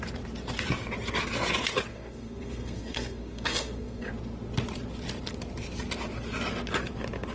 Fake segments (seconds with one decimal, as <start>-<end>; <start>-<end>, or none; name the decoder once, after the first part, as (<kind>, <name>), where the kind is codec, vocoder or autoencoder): 1.9-4.1 (codec, SNAC)